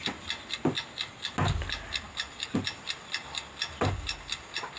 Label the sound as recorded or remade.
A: recorded